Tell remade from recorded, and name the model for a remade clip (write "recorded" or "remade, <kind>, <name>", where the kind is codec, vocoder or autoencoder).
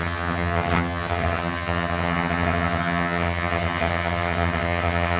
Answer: remade, vocoder, HiFi-GAN